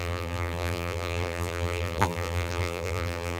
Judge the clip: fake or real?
fake